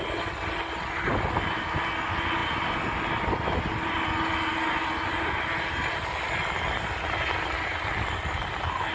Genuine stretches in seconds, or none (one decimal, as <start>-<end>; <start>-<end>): 0.0-8.9